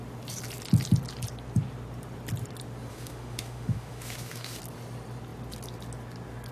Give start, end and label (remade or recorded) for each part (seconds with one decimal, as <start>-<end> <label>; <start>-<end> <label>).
0.0-2.9 recorded; 2.9-4.6 remade; 4.6-6.5 recorded